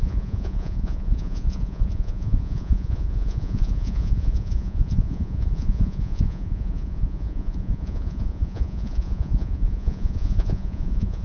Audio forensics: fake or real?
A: fake